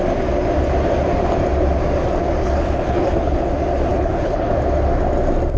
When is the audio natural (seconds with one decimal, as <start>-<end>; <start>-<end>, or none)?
0.0-2.4; 3.5-3.9; 4.5-5.6